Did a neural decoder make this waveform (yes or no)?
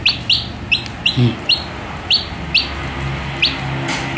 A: no